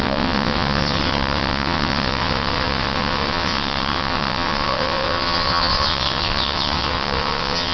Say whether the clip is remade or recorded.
remade